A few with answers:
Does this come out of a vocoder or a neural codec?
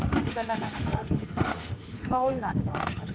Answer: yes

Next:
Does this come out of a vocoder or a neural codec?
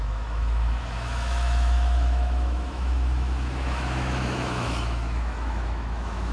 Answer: yes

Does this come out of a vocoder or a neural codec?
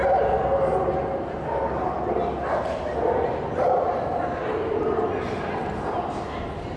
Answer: no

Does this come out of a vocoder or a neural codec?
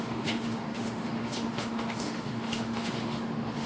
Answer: yes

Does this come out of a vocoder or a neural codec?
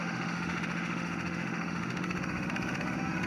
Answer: yes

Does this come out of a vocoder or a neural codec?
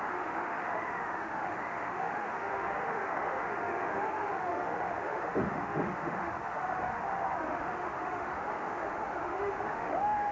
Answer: yes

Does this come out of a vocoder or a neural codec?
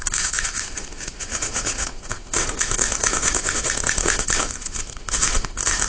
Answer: yes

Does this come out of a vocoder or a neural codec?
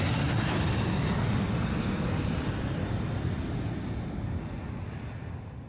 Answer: no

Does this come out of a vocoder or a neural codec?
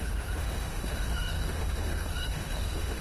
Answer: yes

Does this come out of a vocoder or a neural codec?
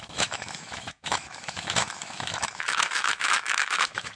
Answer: yes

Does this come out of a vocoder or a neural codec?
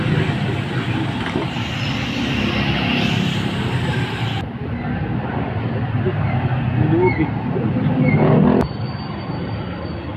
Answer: no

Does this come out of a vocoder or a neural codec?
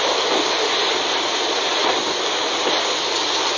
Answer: no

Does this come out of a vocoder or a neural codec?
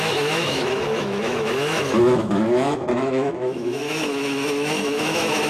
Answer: yes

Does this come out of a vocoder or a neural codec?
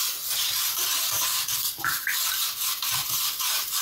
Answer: no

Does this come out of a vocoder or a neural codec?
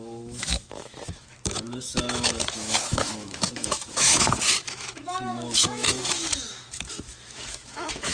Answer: yes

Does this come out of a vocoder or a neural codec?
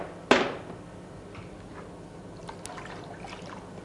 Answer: no